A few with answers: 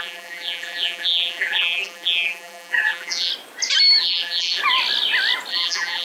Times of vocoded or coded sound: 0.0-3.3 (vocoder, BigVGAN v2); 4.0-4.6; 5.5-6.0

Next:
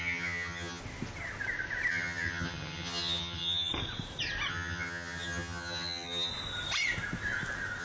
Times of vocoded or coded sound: 0.0-0.8 (vocoder, HiFi-GAN); 1.9-3.7; 4.5-6.3